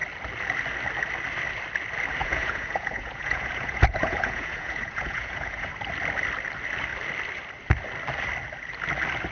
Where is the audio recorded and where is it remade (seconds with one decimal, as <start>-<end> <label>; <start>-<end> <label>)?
0.0-2.2 recorded; 2.2-5.7 remade; 5.7-9.3 recorded